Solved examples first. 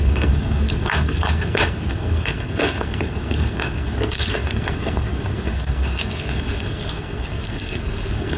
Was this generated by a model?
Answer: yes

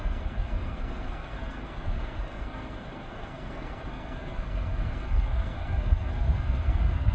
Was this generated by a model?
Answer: yes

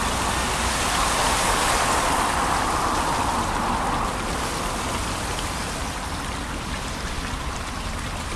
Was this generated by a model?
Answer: no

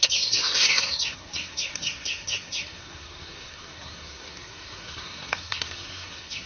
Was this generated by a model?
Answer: yes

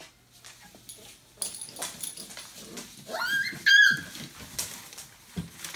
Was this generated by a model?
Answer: no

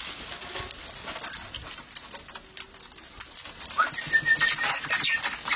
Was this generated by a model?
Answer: no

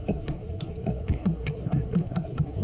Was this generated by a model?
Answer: yes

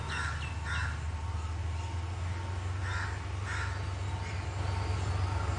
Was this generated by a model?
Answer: no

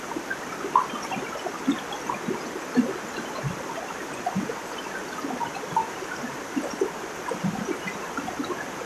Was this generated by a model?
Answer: no